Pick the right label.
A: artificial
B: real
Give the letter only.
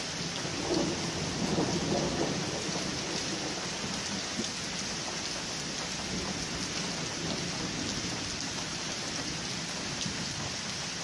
B